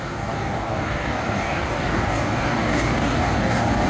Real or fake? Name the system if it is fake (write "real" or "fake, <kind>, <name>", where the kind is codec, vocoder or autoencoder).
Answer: fake, codec, DAC